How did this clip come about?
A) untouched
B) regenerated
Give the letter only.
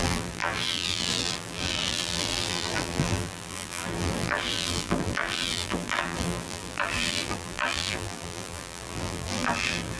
B